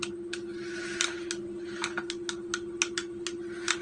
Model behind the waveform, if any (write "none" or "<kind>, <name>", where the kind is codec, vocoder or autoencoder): none